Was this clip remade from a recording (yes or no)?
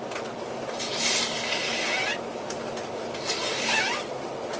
no